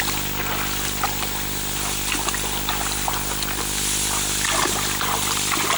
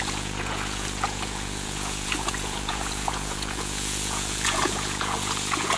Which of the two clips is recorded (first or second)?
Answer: first